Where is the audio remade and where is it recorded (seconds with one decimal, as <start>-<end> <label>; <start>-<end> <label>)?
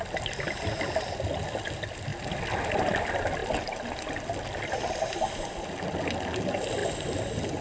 0.0-7.6 recorded